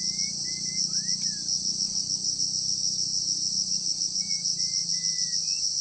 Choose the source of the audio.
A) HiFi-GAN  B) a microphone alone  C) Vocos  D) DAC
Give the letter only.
B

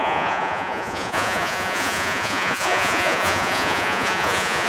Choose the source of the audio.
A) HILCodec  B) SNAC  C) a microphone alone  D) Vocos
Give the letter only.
D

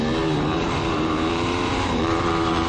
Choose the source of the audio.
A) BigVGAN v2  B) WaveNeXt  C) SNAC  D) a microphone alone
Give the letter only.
A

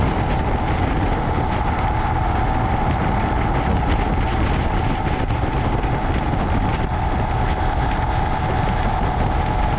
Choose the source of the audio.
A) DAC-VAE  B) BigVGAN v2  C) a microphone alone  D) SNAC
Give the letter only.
C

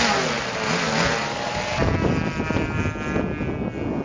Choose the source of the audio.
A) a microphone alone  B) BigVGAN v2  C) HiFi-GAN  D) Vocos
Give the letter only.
A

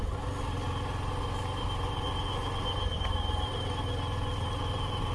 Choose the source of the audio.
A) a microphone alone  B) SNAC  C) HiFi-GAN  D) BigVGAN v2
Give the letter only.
A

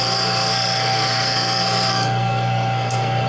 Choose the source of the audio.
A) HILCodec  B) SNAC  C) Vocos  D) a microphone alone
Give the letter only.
B